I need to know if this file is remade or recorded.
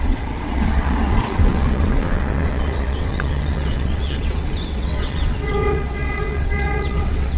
remade